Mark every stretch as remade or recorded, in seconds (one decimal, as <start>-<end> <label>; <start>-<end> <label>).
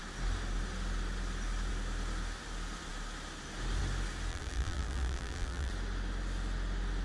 0.0-4.3 recorded; 4.3-5.7 remade; 5.7-7.0 recorded